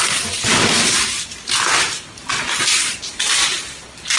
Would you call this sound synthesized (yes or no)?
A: no